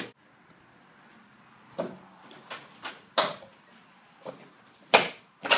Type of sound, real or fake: real